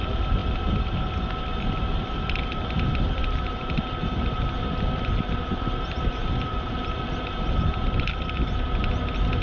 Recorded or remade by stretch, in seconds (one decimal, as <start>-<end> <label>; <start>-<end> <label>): 0.0-9.4 recorded